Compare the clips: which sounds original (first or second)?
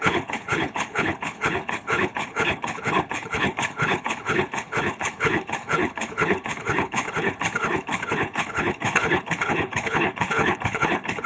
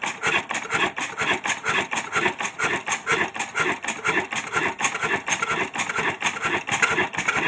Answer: second